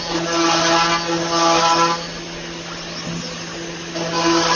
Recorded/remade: recorded